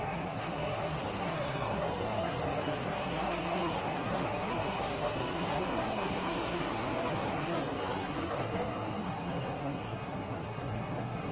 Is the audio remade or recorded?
remade